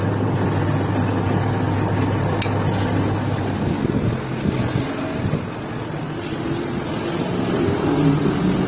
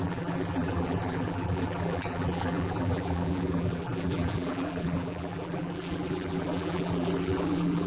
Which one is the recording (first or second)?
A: first